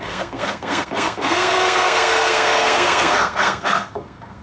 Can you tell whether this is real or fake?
fake